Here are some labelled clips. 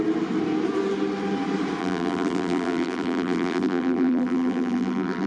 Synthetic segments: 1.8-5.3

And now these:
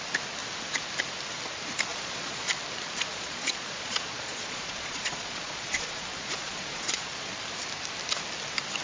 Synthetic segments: 1.9-2.5; 3.1-7.4